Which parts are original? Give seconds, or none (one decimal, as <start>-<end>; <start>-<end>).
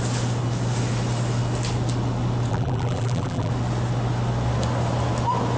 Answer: 0.0-2.5; 3.5-5.6